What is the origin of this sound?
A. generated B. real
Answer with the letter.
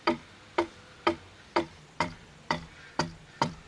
A